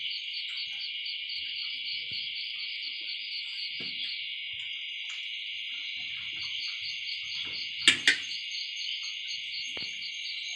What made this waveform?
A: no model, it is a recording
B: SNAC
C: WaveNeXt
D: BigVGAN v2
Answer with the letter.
A